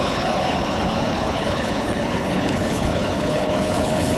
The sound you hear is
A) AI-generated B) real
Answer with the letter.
A